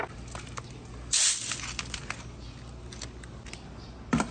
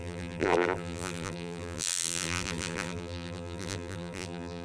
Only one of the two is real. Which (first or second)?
first